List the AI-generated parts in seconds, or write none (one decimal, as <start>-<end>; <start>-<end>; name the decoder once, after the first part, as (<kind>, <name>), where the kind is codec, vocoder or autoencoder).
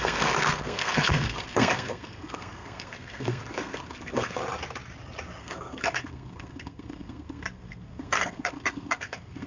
0.0-4.4 (codec, SNAC); 5.4-9.5